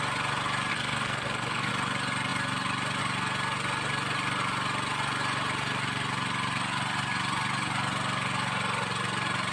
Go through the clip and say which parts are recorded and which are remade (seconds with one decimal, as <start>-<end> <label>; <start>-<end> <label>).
0.0-0.7 recorded; 0.7-1.7 remade; 1.7-9.5 recorded